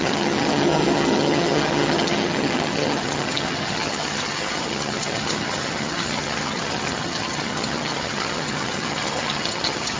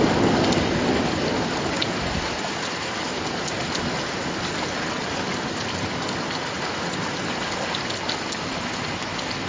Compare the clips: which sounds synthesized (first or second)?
first